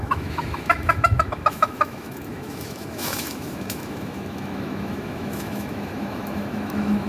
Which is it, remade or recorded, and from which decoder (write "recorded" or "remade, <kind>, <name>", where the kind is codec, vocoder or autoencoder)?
remade, autoencoder, DAC-VAE